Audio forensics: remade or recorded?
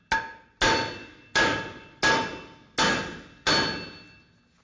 recorded